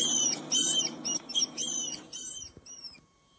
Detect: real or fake fake